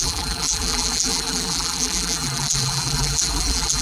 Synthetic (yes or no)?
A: yes